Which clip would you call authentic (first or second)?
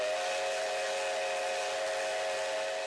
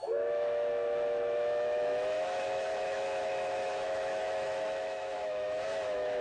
first